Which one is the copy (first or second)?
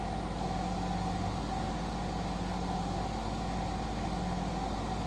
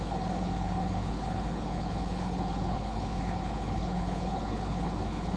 second